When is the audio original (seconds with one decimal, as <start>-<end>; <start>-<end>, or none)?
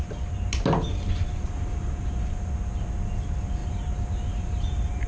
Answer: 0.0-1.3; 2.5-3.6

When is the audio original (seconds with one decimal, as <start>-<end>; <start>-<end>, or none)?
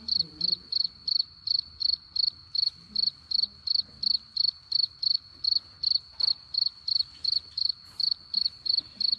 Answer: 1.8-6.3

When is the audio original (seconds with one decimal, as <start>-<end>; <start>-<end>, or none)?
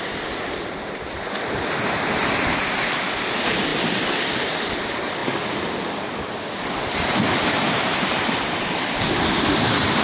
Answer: 0.0-3.7; 4.8-7.9; 8.8-10.0